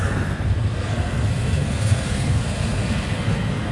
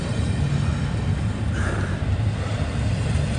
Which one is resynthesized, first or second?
first